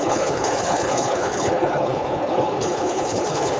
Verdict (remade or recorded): remade